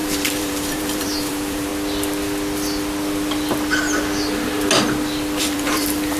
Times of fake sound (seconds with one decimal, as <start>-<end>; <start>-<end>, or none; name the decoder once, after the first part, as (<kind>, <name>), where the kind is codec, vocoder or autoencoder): 0.0-1.7 (vocoder, BigVGAN v2); 5.4-6.2